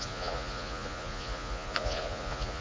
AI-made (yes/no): yes